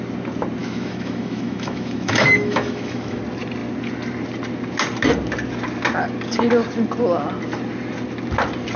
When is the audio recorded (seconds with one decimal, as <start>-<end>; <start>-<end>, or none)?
0.0-0.6; 3.2-8.8